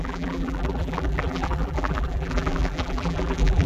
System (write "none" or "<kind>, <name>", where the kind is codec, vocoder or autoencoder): vocoder, BigVGAN v2